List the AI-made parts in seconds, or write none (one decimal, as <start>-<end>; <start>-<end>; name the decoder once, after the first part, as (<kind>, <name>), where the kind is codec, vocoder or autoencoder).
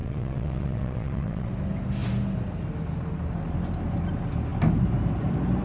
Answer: 0.0-1.5 (vocoder, WaveNeXt)